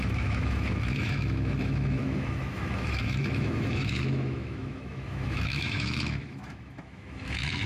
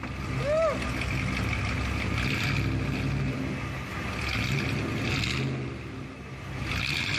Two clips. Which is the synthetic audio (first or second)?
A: first